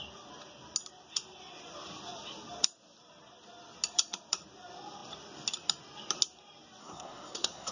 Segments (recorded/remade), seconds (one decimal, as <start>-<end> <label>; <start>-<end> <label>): 0.0-6.8 recorded; 6.8-7.7 remade

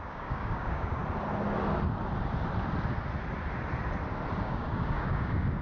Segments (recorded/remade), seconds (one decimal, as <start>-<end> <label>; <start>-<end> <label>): 0.0-1.0 remade; 1.0-4.4 recorded; 4.4-5.6 remade